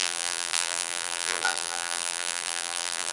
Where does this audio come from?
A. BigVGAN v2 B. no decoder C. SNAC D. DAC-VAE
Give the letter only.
A